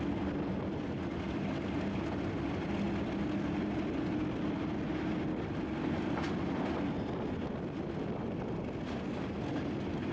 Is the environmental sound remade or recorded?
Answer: recorded